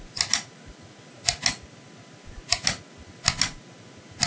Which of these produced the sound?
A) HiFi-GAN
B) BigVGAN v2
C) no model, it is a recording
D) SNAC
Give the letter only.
C